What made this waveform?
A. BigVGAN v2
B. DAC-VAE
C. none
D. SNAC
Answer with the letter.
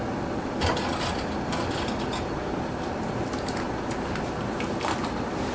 A